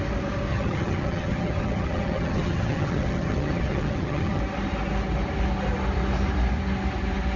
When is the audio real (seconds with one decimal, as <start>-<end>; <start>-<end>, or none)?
0.0-0.5; 4.4-7.4